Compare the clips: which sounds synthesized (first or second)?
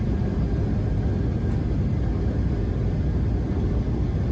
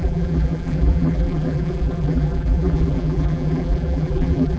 second